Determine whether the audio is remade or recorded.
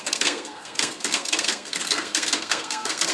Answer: remade